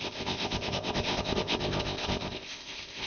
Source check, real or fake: fake